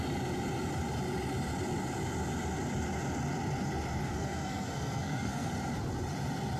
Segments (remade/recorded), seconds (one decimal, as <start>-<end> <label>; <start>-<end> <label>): 0.0-4.0 recorded; 4.0-5.5 remade; 5.5-6.6 recorded